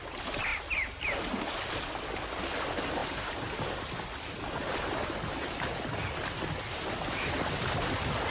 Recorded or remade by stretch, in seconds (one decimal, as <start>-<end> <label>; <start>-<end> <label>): 0.0-0.5 recorded; 0.5-1.7 remade; 1.7-8.3 recorded